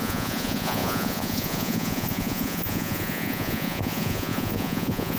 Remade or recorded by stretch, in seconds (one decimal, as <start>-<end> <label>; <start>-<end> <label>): 0.0-5.2 remade